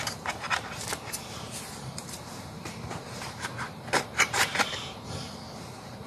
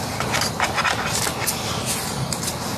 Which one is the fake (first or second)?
first